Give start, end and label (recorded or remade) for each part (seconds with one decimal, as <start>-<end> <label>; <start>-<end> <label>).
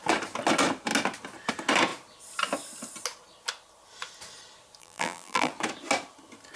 0.0-4.8 recorded; 4.8-5.5 remade; 5.5-6.6 recorded